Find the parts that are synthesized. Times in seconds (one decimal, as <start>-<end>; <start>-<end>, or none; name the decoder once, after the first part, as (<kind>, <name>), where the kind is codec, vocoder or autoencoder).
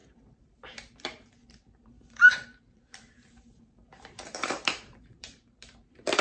0.0-6.2 (vocoder, BigVGAN v2)